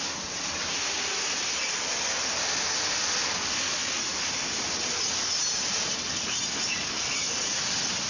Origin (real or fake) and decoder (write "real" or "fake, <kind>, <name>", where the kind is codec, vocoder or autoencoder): real